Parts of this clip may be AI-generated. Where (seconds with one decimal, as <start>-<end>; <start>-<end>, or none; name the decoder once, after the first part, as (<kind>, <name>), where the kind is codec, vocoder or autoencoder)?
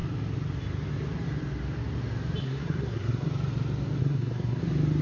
2.4-3.3 (codec, SNAC); 4.0-4.6